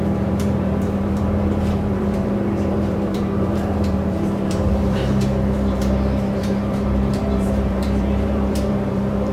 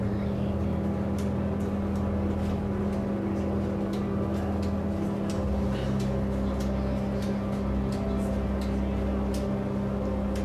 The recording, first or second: second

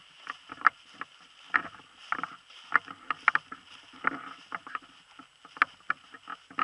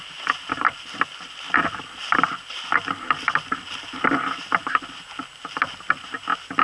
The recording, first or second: first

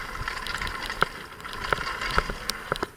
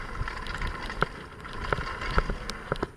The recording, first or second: second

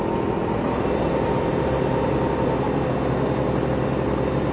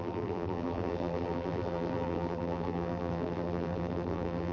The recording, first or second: first